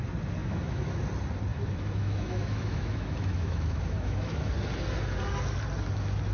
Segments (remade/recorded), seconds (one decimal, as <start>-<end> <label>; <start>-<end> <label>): 0.0-0.4 recorded; 0.4-1.0 remade; 1.0-1.5 recorded; 1.5-4.5 remade; 4.5-6.3 recorded

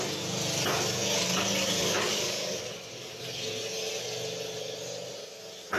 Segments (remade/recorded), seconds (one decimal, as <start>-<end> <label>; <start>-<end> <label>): 0.0-1.8 recorded; 1.8-3.2 remade; 3.2-5.8 recorded

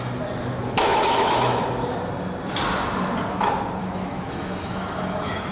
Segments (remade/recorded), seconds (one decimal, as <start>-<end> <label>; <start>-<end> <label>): 0.0-0.8 recorded; 0.8-1.6 remade; 1.6-3.8 recorded; 3.8-5.5 remade